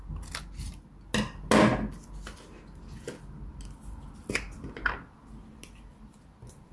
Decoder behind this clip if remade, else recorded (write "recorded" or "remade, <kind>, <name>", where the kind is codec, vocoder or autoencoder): recorded